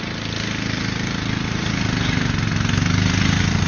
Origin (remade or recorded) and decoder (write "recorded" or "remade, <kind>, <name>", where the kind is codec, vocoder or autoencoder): recorded